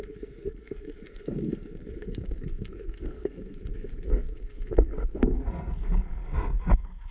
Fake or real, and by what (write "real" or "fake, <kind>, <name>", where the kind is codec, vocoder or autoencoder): fake, codec, SNAC